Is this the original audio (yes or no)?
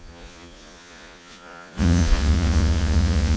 no